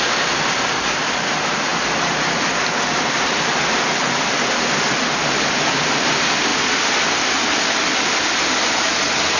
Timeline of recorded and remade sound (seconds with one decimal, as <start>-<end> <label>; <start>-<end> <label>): 0.0-9.4 recorded